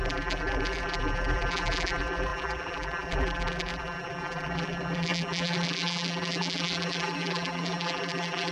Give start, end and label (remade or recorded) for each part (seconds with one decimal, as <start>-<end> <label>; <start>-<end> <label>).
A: 0.0-8.5 remade